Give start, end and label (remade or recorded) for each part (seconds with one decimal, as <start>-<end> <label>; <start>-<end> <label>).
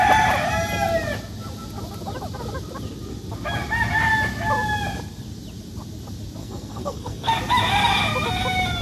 0.0-6.4 recorded; 6.4-7.3 remade; 7.3-8.8 recorded